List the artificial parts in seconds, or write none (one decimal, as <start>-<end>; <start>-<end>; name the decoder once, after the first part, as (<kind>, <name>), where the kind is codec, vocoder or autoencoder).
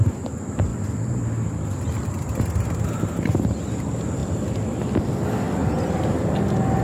5.6-6.3 (vocoder, BigVGAN v2)